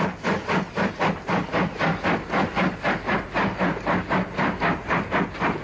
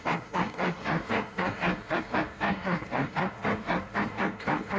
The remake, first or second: second